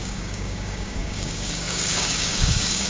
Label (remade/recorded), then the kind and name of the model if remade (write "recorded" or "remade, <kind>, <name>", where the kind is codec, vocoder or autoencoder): remade, codec, DAC